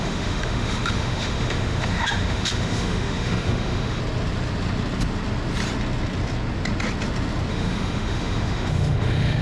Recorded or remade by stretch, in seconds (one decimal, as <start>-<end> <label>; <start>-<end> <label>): 0.0-4.0 remade; 4.0-7.5 recorded; 7.5-9.4 remade